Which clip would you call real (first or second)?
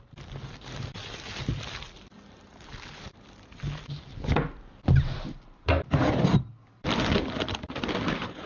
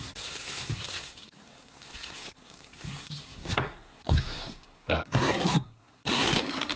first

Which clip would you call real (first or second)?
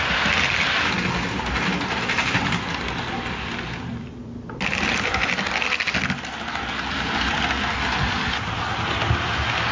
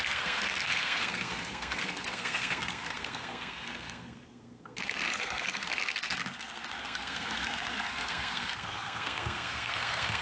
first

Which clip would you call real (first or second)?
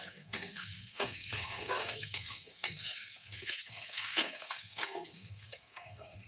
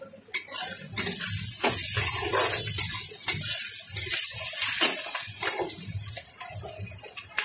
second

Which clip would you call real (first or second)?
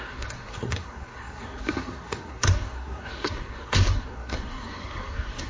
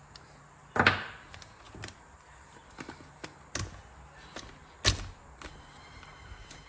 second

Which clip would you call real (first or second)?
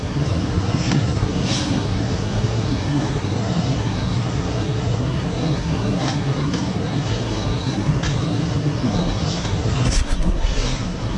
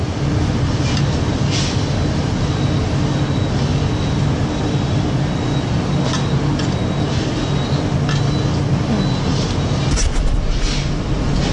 second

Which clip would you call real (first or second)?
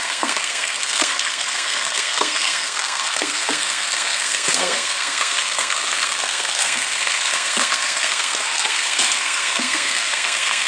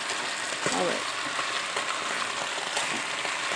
second